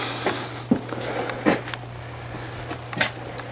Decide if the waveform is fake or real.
real